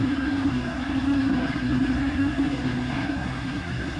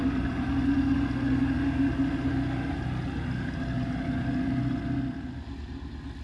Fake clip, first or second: first